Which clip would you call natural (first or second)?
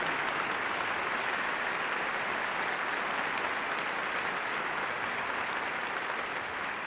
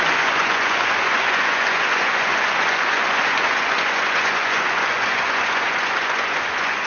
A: first